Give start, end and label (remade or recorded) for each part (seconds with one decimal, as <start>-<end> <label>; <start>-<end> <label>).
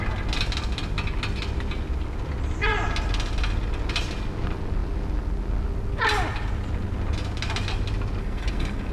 0.0-8.2 recorded; 8.2-8.9 remade